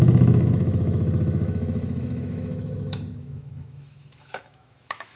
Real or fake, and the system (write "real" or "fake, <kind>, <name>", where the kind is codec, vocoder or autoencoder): fake, autoencoder, DAC-VAE